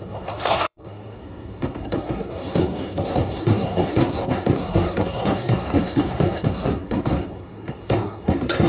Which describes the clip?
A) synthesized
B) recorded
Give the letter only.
A